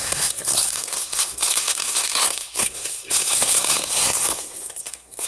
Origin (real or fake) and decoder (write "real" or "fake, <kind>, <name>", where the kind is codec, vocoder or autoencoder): fake, codec, SNAC